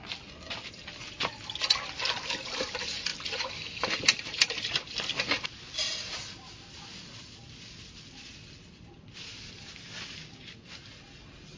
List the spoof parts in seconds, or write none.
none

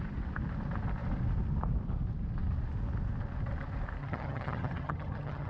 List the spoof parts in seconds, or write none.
4.0-5.5 (vocoder, HiFi-GAN)